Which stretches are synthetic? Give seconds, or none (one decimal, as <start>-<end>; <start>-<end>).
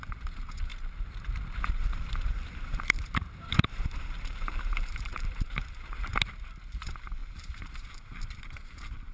0.0-0.7; 2.0-6.1; 6.7-9.1